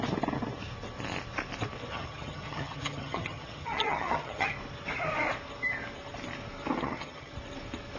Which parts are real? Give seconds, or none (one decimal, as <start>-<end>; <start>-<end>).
0.0-1.9; 4.5-6.8; 7.3-8.0